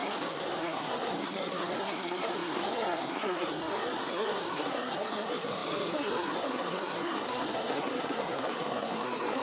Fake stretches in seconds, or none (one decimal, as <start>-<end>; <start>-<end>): 0.0-9.4